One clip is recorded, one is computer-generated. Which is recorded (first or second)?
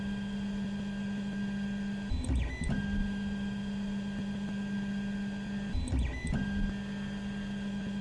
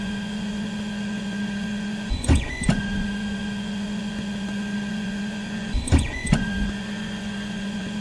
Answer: first